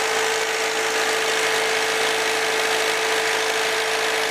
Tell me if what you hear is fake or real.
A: real